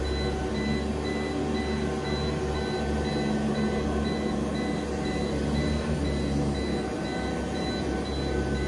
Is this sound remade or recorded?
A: recorded